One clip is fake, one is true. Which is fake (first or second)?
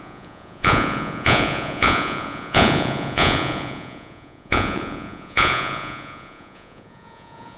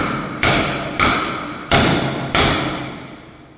first